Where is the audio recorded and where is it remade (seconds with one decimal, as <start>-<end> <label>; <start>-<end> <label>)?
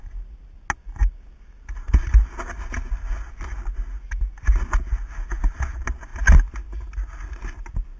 0.0-8.0 recorded